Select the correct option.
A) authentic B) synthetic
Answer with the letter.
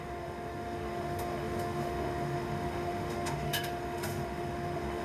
B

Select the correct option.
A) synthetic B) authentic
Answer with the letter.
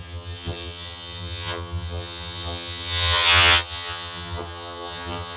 A